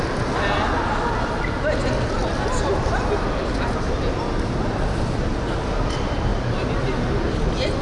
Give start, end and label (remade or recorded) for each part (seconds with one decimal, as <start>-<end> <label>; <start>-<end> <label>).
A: 0.0-7.8 recorded